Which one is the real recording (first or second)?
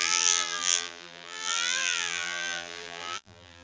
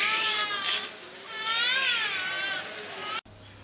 second